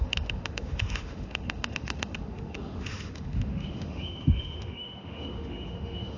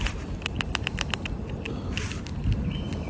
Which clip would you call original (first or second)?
second